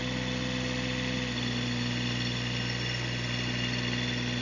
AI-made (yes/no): no